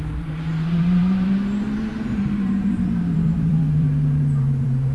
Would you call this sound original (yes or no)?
no